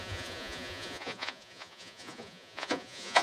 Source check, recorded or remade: remade